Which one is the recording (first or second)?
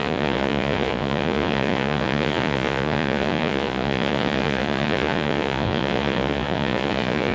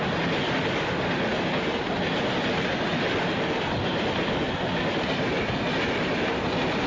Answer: second